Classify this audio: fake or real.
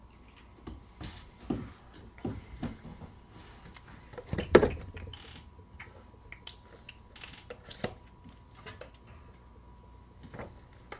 real